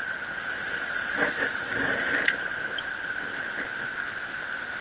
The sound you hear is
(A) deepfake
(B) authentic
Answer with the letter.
B